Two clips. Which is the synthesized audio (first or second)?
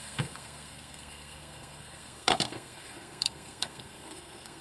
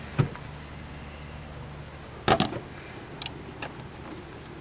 first